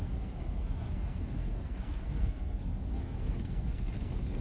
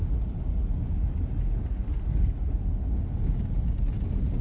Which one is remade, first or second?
first